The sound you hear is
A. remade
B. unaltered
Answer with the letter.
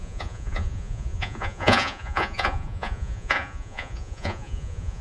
A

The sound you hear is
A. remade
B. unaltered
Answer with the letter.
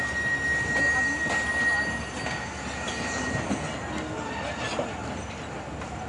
B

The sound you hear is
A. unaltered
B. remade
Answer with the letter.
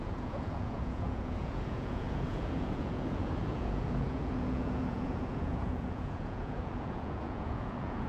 B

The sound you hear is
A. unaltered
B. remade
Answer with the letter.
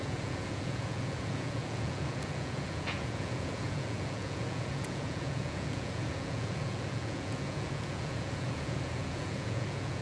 B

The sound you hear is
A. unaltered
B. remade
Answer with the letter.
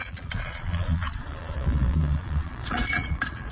B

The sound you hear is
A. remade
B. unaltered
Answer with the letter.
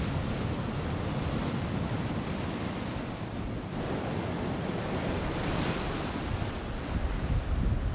B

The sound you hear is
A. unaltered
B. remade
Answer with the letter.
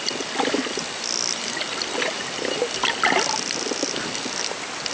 A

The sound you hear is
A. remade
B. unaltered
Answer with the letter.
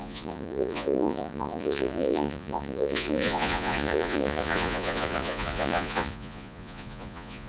A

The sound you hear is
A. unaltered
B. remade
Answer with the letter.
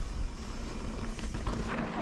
A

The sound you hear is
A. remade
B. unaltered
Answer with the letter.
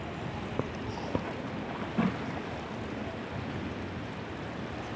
B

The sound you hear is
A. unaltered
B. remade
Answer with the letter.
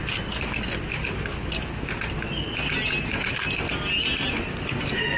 A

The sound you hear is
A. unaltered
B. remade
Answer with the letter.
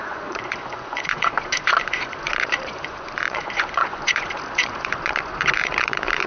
B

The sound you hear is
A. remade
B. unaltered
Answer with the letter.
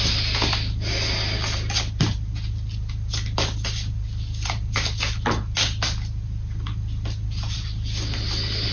B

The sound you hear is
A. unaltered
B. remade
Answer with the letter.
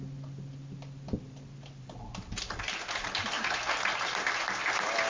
A